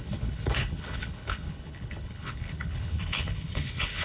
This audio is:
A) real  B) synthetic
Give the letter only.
B